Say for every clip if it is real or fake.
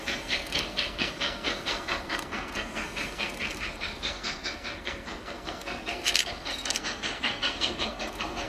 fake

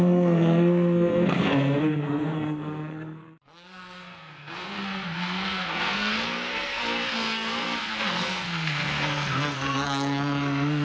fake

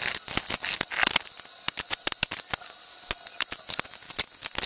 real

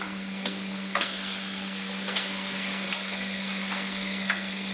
fake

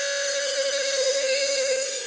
fake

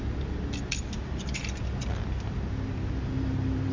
real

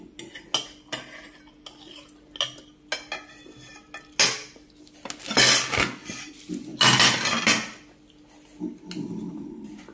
real